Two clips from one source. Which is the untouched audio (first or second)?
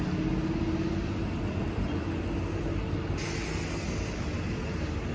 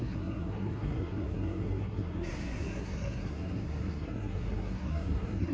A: first